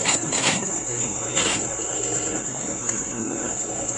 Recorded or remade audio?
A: remade